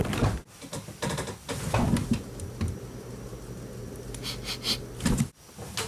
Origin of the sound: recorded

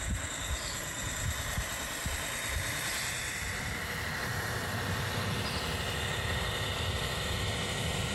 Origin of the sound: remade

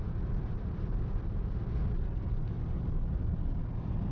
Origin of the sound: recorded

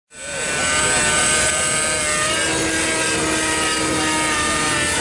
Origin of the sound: recorded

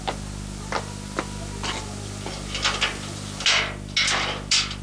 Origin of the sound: recorded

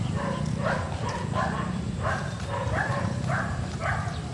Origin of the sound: remade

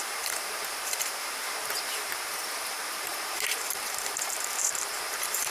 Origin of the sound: remade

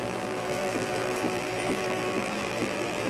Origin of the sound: remade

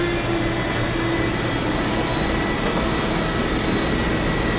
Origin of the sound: recorded